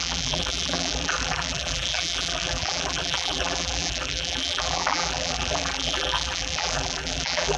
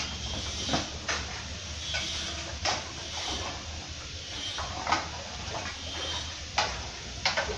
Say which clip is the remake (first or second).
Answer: first